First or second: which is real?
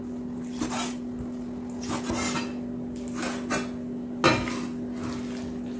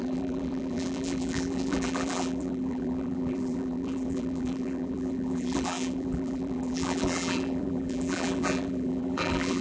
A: first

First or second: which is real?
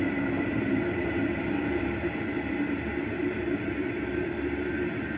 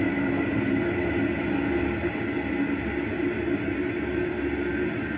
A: second